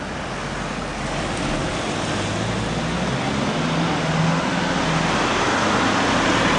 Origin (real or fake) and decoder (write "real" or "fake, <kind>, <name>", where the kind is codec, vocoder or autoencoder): real